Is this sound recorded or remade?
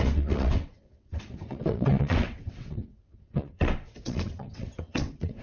remade